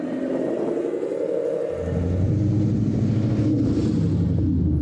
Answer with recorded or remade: recorded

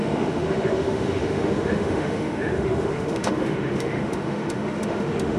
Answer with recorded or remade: remade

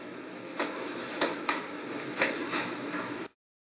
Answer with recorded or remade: remade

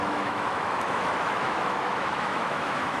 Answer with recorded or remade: remade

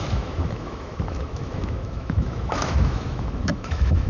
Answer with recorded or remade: remade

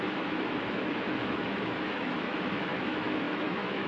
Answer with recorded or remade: remade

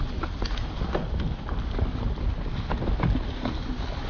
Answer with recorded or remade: recorded